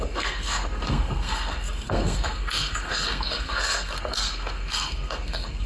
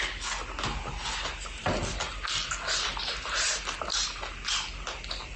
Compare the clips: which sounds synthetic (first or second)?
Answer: first